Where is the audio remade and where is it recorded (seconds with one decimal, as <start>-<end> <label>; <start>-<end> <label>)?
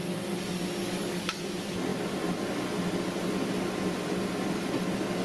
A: 0.0-0.8 recorded; 0.8-1.4 remade; 1.4-5.2 recorded